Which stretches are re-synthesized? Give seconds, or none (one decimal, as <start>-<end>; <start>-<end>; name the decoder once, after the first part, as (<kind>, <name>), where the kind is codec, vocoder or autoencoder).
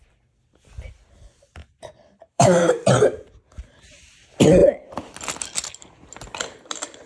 1.6-2.9 (vocoder, BigVGAN v2)